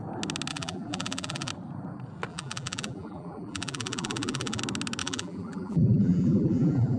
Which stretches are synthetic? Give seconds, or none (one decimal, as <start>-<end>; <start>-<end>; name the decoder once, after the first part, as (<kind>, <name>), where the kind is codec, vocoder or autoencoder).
0.5-1.5 (vocoder, BigVGAN v2); 2.3-4.6; 5.0-7.0